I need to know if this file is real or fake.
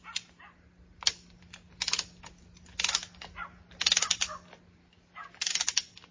real